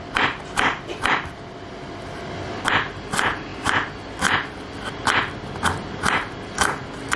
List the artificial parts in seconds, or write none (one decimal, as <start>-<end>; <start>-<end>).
none